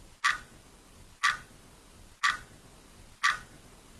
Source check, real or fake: real